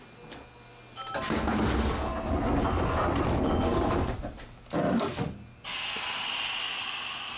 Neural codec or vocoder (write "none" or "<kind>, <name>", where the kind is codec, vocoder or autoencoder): none